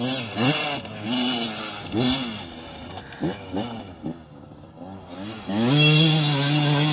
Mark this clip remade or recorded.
recorded